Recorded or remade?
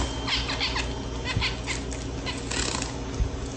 recorded